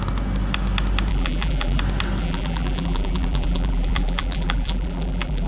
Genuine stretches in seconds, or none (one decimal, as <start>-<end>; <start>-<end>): 0.0-1.1; 1.8-2.2